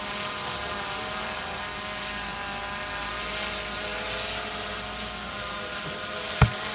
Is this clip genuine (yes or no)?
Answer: yes